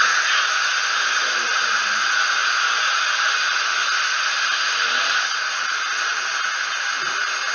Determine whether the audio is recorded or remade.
recorded